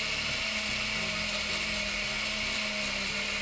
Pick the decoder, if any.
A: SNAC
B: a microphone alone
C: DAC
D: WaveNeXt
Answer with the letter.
B